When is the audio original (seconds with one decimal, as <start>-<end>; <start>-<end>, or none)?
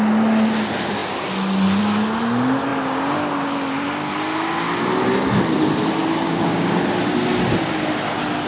0.0-6.0; 6.8-8.5